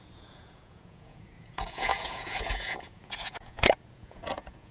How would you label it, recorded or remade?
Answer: remade